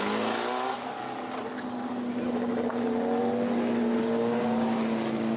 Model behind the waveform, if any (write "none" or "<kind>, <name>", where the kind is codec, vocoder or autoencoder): none